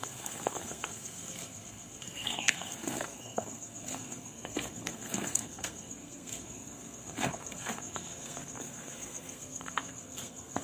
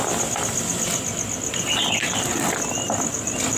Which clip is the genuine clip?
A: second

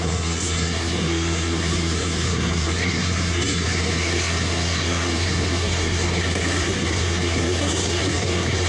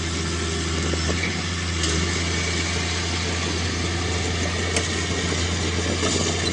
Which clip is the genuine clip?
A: second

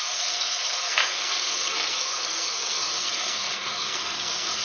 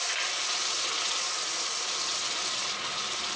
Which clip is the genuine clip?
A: second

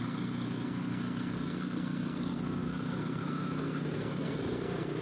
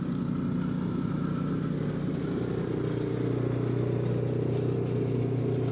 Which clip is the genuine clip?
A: second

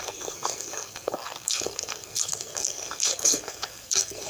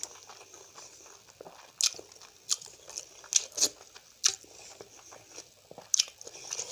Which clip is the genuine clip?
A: second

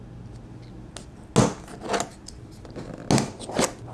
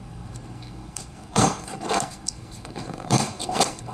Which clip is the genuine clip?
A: first